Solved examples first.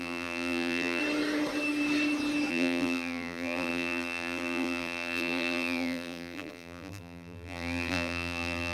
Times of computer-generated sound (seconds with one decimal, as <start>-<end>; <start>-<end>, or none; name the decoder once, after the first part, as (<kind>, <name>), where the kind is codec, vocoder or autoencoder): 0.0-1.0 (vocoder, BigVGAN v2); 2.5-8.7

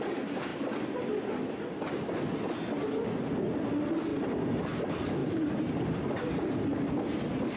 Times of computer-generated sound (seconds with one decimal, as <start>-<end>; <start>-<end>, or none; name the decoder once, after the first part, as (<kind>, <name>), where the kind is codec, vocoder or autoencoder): none

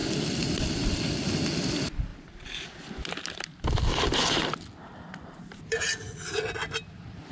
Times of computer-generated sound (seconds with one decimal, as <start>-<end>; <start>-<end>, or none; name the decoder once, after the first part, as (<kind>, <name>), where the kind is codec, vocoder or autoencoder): 2.1-6.5 (vocoder, BigVGAN v2)

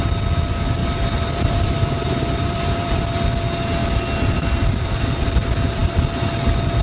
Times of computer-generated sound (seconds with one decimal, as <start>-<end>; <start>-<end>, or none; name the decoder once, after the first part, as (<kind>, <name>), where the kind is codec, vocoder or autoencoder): 0.8-3.0 (vocoder, BigVGAN v2)

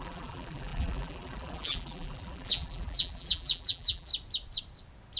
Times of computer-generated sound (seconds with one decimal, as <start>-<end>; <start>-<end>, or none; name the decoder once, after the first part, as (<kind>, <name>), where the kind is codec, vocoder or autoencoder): 0.0-4.1 (vocoder, BigVGAN v2)